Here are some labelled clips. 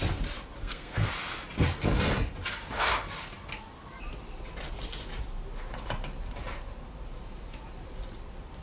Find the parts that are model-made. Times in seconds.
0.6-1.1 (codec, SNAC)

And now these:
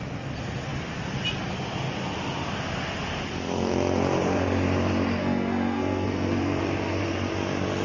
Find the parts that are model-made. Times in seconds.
5.2-6.6 (codec, SNAC)

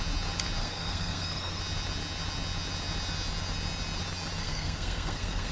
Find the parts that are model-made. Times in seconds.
0.6-1.6 (codec, SNAC); 4.4-5.5